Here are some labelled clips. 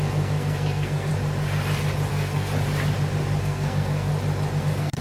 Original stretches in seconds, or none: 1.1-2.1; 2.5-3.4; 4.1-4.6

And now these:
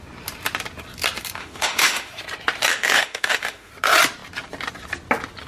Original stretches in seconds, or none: 0.0-1.4; 2.1-2.7; 3.7-5.5